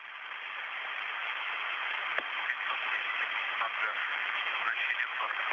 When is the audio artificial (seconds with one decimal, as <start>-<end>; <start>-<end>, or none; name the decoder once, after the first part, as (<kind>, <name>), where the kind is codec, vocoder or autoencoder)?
1.2-2.0 (autoencoder, DAC-VAE); 4.0-5.5